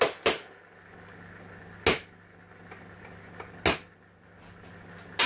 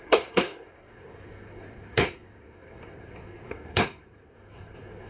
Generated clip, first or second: second